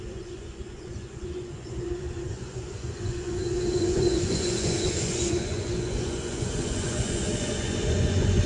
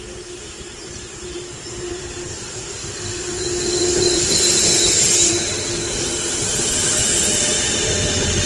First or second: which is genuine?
second